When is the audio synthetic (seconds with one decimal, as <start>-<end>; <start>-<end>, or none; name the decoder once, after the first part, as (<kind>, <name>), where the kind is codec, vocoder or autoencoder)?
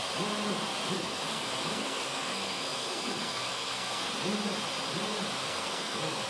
0.9-4.1 (codec, SNAC); 5.3-6.3